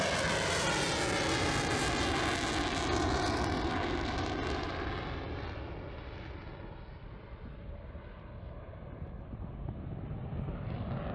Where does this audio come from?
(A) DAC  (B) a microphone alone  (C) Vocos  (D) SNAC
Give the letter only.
B